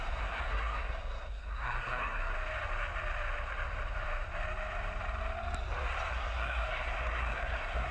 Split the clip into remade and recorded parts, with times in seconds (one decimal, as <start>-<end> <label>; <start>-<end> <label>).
0.0-2.3 remade; 2.3-6.1 recorded; 6.1-7.9 remade